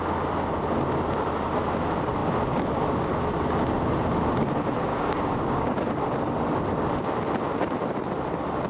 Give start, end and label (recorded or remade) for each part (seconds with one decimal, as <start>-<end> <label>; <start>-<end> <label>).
0.0-4.9 recorded; 4.9-6.0 remade; 6.0-8.7 recorded